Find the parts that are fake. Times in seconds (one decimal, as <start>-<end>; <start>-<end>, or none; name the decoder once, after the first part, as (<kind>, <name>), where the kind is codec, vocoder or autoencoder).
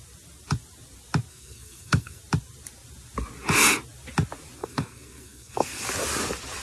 1.3-2.2 (codec, SNAC); 4.6-5.8